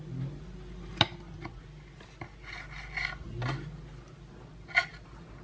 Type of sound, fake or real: real